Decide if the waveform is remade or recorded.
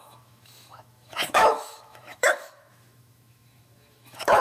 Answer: remade